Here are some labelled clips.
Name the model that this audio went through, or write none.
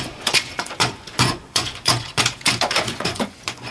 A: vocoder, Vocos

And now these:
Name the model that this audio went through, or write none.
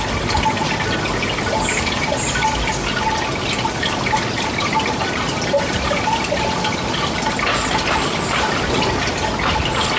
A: none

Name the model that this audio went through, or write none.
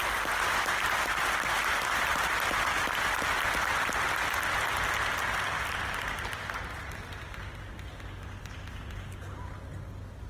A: none